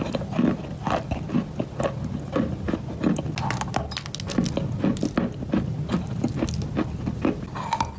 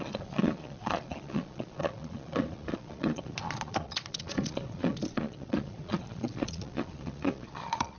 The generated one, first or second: second